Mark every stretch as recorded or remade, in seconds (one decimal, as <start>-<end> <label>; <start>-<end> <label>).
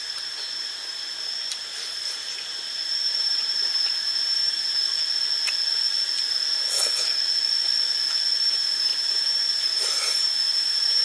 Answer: 0.0-4.8 remade; 4.8-8.4 recorded; 8.4-11.0 remade